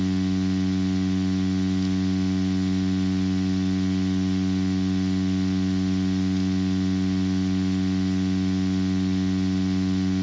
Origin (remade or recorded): recorded